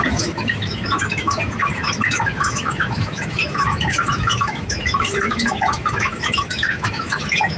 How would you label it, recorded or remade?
remade